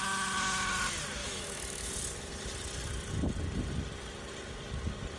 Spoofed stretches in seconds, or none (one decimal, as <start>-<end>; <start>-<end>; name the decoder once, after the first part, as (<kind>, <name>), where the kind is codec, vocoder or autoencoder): 1.2-1.9 (autoencoder, DAC-VAE)